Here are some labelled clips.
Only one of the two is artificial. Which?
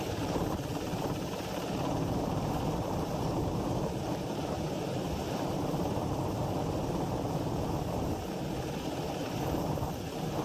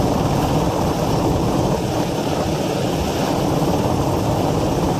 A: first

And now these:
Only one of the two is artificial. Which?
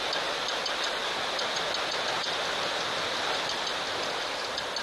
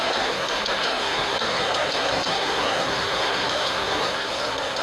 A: second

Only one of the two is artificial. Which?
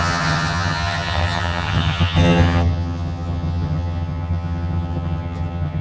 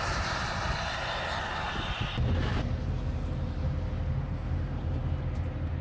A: first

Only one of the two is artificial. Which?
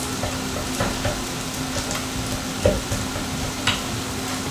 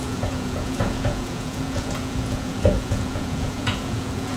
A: second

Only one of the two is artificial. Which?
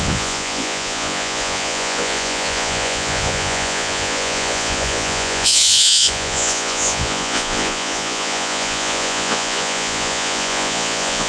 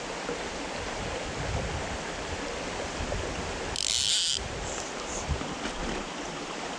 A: first